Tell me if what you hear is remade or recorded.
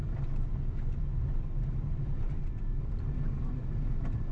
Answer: remade